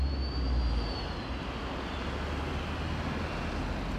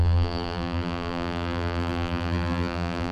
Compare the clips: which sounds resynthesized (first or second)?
second